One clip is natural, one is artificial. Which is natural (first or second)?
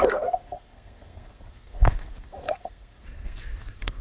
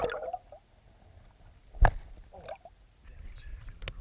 second